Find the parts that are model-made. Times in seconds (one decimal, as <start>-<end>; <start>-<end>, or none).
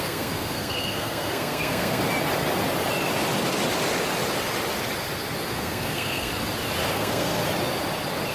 0.0-2.0; 5.5-6.3; 6.9-7.4